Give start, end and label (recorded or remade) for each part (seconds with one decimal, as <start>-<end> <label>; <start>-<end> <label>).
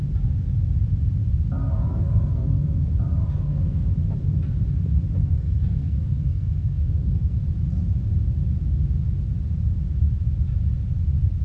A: 0.0-1.9 recorded; 1.9-2.9 remade; 2.9-3.3 recorded; 3.3-3.9 remade; 3.9-5.2 recorded; 5.2-7.4 remade; 7.4-11.4 recorded